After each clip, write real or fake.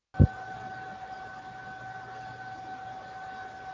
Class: real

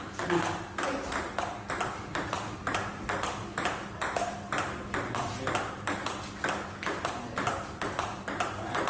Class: real